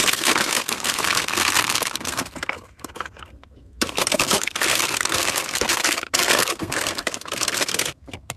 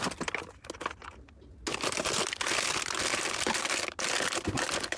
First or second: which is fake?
first